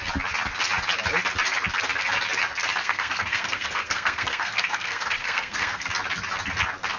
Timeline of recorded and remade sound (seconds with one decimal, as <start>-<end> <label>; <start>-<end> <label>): 0.0-2.8 recorded; 2.8-5.9 remade; 5.9-7.0 recorded